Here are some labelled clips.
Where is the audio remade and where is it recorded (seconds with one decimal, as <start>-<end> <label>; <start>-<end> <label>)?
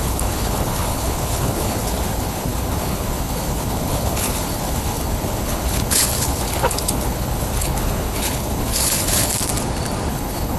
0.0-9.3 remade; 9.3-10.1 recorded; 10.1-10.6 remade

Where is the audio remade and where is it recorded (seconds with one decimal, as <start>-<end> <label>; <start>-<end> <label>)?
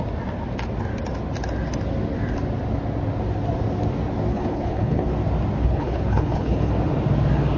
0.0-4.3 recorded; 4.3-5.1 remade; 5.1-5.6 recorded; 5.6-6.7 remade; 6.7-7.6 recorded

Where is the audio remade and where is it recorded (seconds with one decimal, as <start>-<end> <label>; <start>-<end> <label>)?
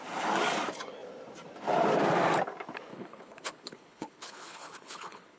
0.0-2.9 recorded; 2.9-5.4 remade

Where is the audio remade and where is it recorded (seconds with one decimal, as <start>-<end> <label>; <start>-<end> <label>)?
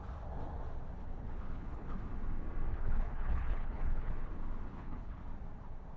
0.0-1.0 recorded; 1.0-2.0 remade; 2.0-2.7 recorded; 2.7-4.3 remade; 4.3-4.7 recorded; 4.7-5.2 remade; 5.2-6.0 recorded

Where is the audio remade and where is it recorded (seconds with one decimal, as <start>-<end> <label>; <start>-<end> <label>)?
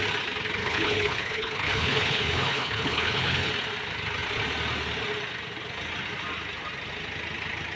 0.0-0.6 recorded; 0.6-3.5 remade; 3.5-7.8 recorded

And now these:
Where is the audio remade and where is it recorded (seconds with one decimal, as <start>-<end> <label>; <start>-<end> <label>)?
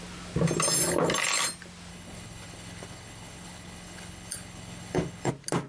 0.0-1.9 recorded; 1.9-5.3 remade; 5.3-5.7 recorded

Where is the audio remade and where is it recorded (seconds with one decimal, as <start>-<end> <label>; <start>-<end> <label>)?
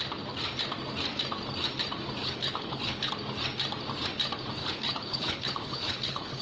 0.0-2.2 recorded; 2.2-3.1 remade; 3.1-4.6 recorded; 4.6-6.4 remade